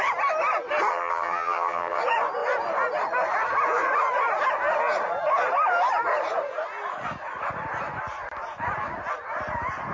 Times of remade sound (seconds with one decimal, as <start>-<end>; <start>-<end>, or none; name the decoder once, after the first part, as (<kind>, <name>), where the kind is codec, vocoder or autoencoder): 0.9-2.0 (vocoder, HiFi-GAN)